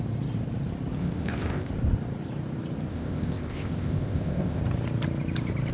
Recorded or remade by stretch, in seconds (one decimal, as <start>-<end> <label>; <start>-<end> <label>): 0.0-1.0 recorded; 1.0-1.7 remade; 1.7-2.9 recorded; 2.9-4.6 remade; 4.6-5.7 recorded